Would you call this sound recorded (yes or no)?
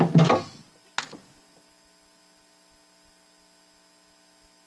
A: yes